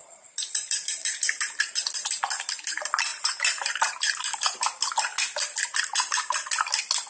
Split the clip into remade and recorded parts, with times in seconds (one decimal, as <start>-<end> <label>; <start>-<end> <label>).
0.0-1.6 remade; 1.6-3.1 recorded; 3.1-4.9 remade; 4.9-7.1 recorded

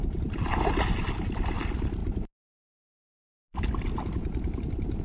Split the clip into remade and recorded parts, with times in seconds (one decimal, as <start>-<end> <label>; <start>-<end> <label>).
0.0-5.0 recorded

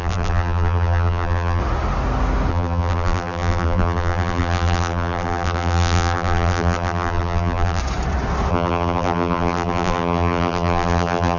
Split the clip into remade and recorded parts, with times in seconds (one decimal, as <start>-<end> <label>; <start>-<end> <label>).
0.0-1.6 remade; 1.6-2.5 recorded; 2.5-7.8 remade; 7.8-8.5 recorded; 8.5-11.4 remade